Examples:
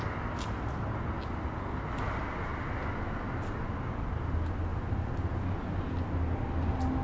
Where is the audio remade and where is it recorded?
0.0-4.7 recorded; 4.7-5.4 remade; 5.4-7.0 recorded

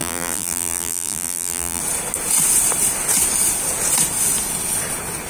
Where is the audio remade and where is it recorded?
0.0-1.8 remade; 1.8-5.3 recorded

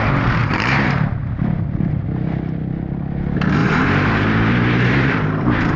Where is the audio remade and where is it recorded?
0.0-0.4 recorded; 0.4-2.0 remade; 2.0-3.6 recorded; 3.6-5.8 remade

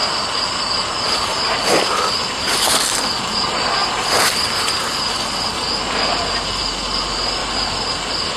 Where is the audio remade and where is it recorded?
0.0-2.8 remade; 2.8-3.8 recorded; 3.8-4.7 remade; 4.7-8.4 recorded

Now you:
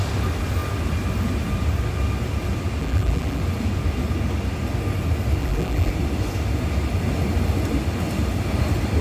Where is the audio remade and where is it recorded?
0.0-2.8 recorded; 2.8-3.4 remade; 3.4-5.4 recorded; 5.4-5.9 remade; 5.9-9.0 recorded

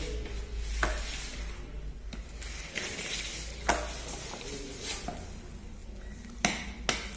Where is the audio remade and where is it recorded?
0.0-7.2 recorded